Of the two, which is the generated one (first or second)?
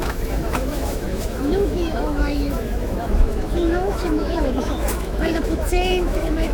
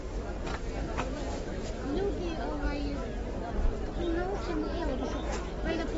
first